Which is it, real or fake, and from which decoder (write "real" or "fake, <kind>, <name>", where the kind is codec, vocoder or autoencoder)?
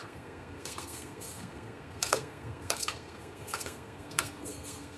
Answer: fake, codec, SNAC